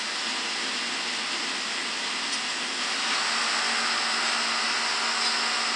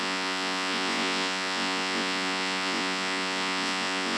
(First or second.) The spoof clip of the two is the second